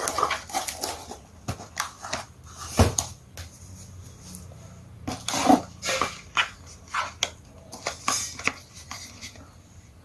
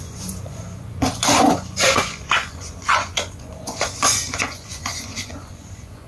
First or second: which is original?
first